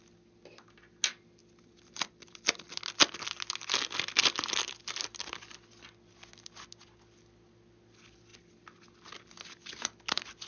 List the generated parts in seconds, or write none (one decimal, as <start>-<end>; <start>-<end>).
none